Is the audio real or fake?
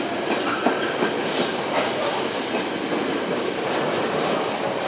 real